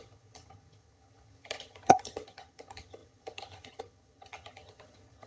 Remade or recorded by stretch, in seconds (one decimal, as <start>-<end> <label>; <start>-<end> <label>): 0.0-5.3 remade

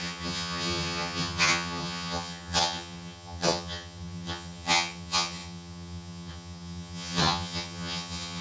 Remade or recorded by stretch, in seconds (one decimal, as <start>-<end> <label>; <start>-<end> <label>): 0.0-8.4 remade

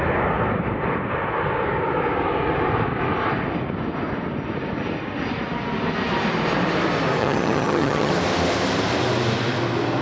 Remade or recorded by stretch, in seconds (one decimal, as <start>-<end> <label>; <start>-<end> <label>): 0.0-7.2 recorded; 7.2-8.1 remade; 8.1-10.0 recorded